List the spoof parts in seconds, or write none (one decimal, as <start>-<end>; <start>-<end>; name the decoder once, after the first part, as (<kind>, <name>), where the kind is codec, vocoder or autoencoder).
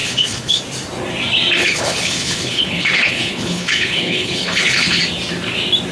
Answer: 0.0-0.6 (codec, HILCodec); 1.6-5.0